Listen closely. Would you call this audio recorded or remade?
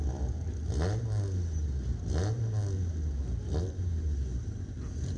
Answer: recorded